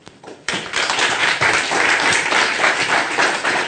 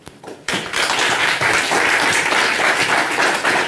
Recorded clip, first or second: second